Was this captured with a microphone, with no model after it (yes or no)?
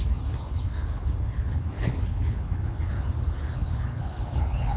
no